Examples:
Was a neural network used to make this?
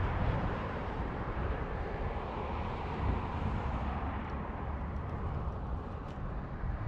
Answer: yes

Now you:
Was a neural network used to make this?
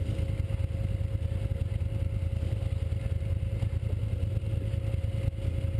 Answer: no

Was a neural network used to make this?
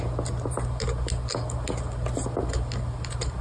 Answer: no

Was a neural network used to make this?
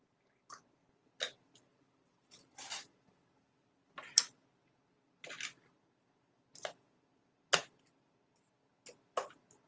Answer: no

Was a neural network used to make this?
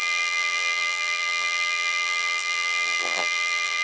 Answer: yes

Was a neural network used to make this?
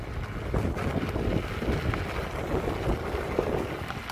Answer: no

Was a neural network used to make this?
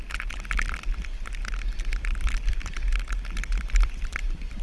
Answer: yes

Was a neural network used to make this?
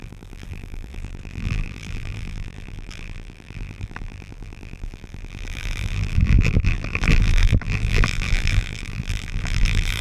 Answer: yes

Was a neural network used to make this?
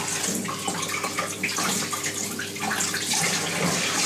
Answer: no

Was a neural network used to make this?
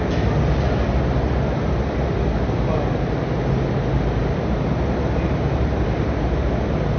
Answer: no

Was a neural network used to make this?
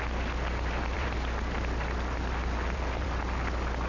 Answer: yes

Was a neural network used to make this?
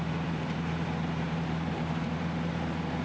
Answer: yes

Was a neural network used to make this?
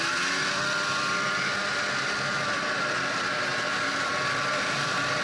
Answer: yes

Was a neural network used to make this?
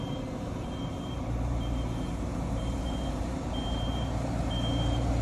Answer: yes